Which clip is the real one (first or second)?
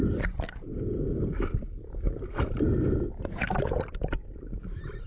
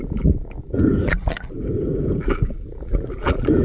first